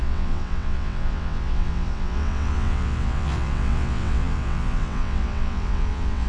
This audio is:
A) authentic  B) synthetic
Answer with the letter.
B